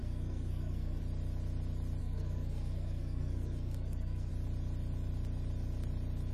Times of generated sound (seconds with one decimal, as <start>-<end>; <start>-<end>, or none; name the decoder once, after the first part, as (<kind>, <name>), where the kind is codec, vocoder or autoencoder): 0.0-1.0 (codec, SNAC); 2.0-4.3